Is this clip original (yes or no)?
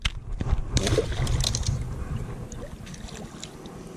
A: yes